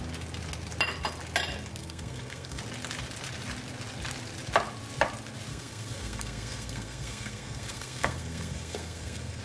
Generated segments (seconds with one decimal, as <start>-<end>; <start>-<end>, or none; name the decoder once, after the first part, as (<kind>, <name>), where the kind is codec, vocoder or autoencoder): 1.8-2.6 (codec, SNAC); 5.5-9.4